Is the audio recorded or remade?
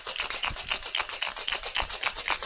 recorded